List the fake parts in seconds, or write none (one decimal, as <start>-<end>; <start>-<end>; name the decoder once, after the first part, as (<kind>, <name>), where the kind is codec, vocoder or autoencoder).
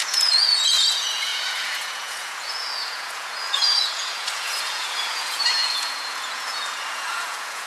0.0-7.7 (vocoder, Vocos)